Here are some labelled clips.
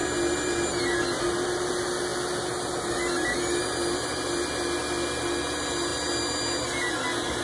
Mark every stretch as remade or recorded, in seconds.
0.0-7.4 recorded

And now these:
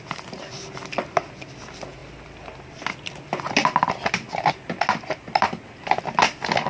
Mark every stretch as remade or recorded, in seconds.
0.0-6.7 recorded

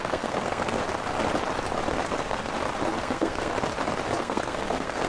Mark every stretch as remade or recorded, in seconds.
0.0-0.8 remade; 0.8-1.9 recorded; 1.9-2.4 remade; 2.4-3.0 recorded; 3.0-3.5 remade; 3.5-4.2 recorded; 4.2-5.1 remade